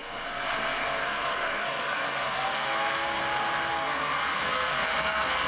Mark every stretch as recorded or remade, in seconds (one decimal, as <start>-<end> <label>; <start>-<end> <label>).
0.0-3.2 remade; 3.2-3.7 recorded; 3.7-5.5 remade